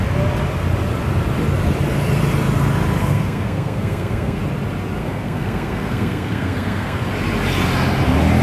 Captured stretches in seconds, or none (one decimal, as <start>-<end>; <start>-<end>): 0.0-3.0; 4.4-5.0; 7.1-8.4